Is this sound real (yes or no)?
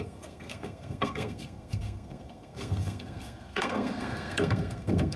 no